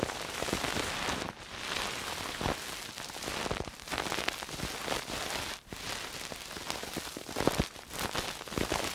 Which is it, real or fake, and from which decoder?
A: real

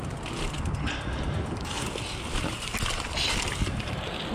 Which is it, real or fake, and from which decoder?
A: real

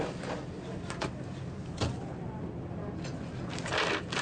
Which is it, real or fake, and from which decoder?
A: real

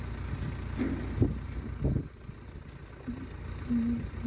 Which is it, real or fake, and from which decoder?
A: real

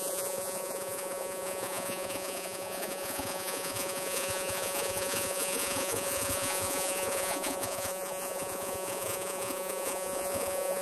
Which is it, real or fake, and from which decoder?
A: fake, vocoder, Vocos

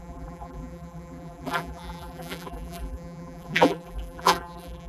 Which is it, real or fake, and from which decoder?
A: fake, vocoder, BigVGAN v2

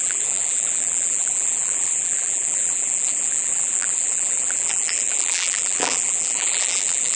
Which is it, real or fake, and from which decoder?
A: fake, vocoder, BigVGAN v2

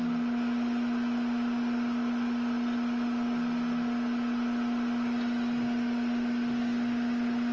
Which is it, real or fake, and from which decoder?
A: real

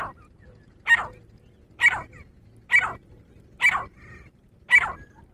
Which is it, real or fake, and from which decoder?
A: real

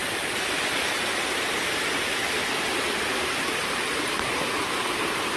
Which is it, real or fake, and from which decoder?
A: real